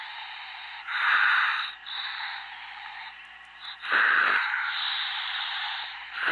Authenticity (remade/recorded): remade